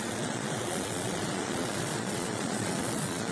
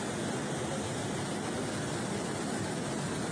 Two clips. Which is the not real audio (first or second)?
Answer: first